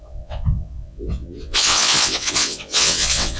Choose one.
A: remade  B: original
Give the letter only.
A